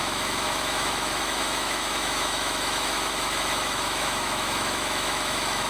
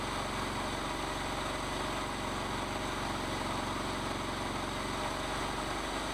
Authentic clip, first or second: second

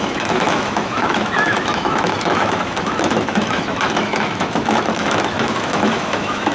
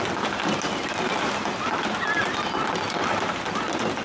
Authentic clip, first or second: second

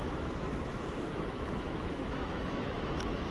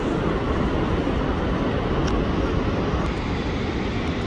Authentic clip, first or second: second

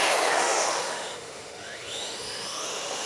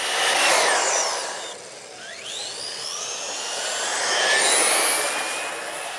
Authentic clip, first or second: second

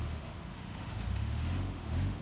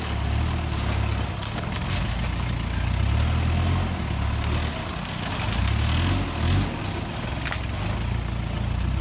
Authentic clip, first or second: second